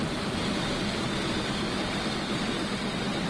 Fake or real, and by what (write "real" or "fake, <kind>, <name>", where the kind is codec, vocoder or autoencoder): real